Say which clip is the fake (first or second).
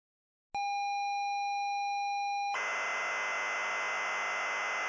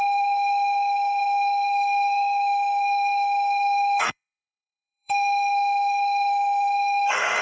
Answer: second